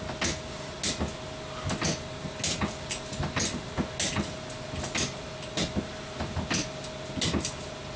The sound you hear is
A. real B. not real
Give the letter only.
A